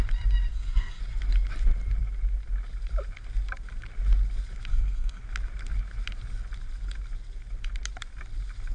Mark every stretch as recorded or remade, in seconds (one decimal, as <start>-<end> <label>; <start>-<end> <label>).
0.0-0.5 recorded; 0.5-1.0 remade; 1.0-4.7 recorded; 4.7-5.2 remade; 5.2-8.7 recorded